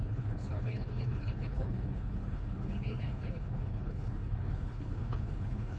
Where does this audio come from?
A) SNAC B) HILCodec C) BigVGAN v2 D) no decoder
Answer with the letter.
B